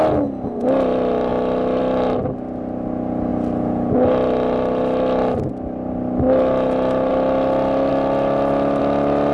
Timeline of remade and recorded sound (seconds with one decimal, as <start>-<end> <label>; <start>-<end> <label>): 0.0-9.3 recorded